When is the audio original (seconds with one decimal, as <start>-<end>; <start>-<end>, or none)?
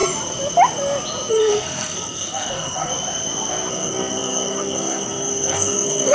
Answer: 0.0-1.3; 2.9-3.7